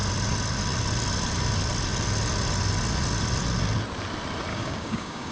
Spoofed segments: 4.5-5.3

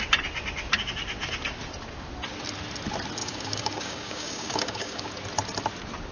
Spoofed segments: 3.2-5.1